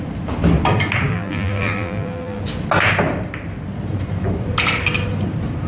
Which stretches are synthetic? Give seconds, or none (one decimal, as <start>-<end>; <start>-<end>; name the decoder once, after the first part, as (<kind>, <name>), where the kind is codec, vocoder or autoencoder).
1.1-2.4 (vocoder, BigVGAN v2)